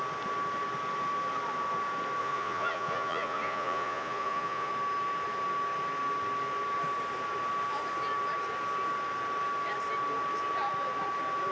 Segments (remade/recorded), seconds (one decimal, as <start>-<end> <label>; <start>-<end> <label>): 0.0-2.2 recorded; 2.2-4.7 remade; 4.7-11.5 recorded